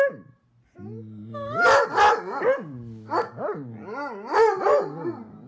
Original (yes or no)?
yes